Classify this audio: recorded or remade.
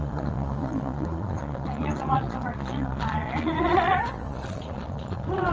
remade